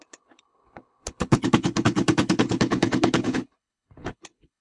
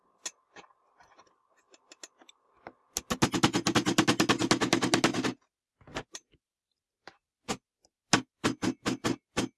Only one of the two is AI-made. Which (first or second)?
first